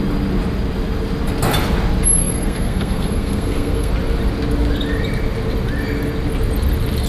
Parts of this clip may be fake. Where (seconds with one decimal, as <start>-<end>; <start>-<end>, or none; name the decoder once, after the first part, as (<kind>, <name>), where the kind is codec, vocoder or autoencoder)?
2.2-3.9 (codec, SNAC)